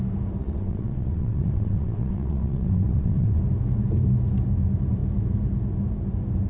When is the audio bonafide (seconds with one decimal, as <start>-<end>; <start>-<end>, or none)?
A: 0.0-0.4; 3.4-6.5

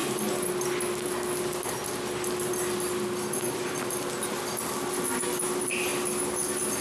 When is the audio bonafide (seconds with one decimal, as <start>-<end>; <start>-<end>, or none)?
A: 0.0-6.8